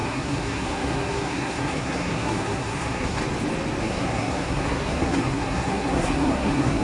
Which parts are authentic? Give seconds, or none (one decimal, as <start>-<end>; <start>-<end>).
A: 3.2-3.8